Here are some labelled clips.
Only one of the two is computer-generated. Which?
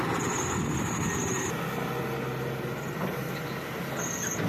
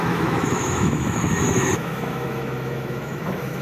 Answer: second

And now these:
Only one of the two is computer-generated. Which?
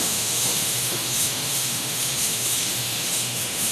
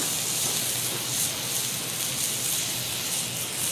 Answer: first